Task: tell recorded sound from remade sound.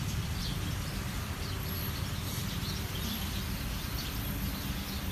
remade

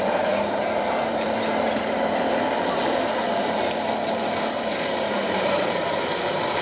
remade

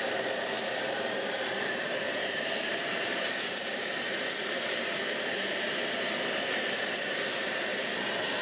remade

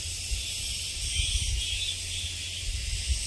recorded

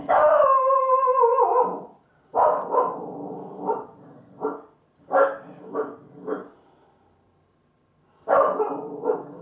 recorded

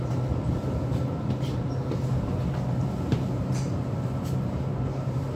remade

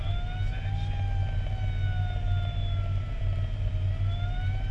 recorded